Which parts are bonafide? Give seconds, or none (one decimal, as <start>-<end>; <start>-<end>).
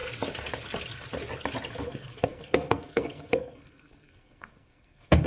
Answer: 0.0-1.8